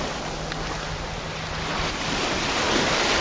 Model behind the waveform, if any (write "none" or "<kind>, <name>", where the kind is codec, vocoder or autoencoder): none